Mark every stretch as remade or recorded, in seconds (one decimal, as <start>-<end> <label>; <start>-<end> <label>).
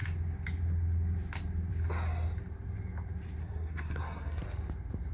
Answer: 0.0-3.4 recorded; 3.4-4.4 remade; 4.4-5.1 recorded